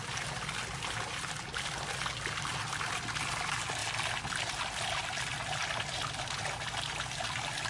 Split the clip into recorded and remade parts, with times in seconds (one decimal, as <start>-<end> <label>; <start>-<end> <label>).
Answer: 0.0-7.7 recorded